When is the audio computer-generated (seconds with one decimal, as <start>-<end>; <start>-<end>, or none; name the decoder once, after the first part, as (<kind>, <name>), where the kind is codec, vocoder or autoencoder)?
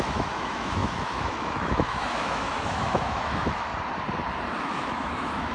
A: 0.0-3.7 (autoencoder, DAC-VAE); 4.6-5.5